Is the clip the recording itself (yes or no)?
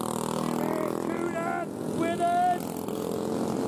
yes